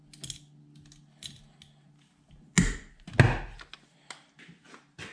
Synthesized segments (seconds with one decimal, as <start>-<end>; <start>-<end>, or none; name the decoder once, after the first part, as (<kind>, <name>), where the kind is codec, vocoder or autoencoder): none